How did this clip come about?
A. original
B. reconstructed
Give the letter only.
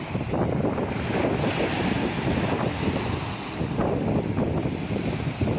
A